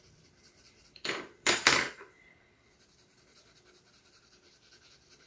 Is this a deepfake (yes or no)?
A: yes